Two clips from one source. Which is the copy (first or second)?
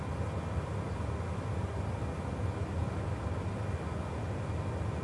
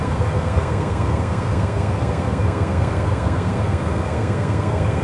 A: second